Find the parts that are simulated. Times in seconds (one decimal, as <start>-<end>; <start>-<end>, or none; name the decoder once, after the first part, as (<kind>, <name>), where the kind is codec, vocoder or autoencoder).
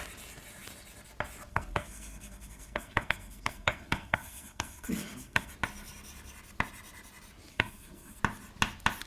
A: 1.5-5.5 (codec, SNAC); 7.5-8.2